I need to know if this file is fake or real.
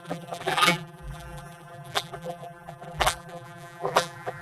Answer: fake